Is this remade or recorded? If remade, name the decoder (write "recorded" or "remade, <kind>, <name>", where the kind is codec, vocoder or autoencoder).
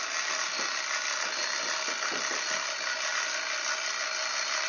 recorded